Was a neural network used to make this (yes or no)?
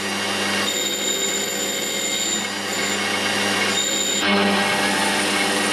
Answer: no